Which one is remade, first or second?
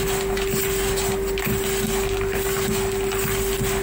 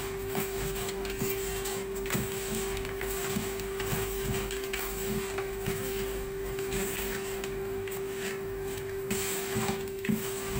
second